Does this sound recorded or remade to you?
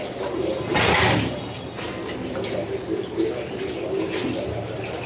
recorded